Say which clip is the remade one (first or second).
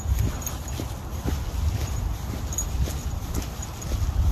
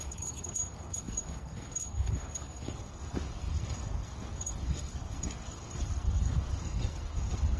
second